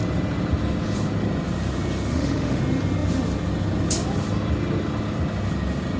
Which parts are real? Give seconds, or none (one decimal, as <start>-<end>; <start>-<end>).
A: 0.0-2.1; 2.6-6.0

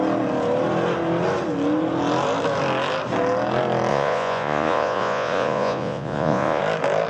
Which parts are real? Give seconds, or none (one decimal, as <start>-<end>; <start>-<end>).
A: 0.0-3.9; 6.6-7.1

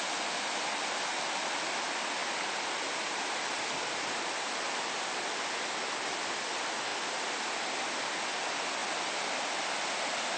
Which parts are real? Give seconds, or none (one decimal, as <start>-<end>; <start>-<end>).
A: 0.0-10.4